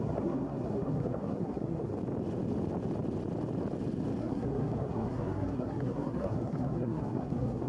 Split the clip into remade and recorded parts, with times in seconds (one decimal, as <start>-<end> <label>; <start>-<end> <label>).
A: 0.0-1.9 remade; 1.9-4.2 recorded; 4.2-7.7 remade